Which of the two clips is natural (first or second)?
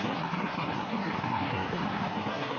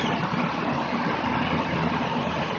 second